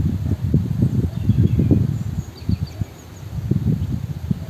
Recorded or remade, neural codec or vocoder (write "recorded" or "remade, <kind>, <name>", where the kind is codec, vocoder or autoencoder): recorded